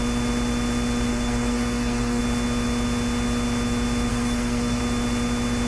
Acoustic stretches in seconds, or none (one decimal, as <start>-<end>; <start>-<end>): 0.0-1.1; 2.2-4.1; 4.8-5.7